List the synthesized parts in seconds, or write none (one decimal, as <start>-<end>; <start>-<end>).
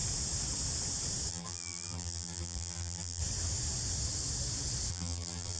1.3-3.2; 4.9-5.6